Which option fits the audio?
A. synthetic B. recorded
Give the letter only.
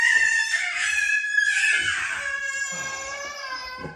B